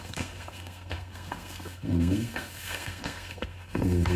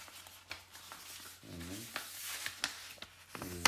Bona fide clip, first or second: second